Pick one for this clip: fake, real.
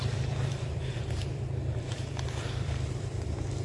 fake